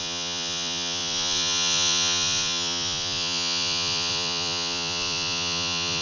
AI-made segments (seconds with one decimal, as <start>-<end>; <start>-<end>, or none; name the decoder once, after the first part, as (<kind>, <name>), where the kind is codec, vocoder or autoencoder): 0.0-6.0 (vocoder, Vocos)